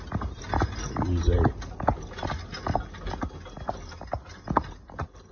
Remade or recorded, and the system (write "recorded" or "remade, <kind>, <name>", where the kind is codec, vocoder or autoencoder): recorded